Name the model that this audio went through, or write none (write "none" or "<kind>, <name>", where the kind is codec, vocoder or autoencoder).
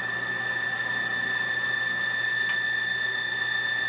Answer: none